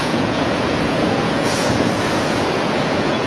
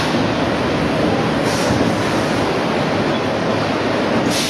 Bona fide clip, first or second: second